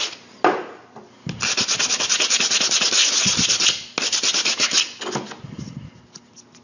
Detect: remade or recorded recorded